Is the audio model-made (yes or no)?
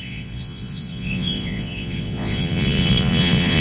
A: yes